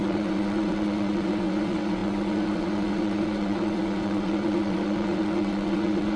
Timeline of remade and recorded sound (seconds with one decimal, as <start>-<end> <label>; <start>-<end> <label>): 0.0-6.2 remade